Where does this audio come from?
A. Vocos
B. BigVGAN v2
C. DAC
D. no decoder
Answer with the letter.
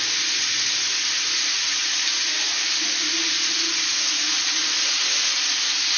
D